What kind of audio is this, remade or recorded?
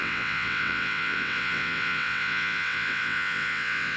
remade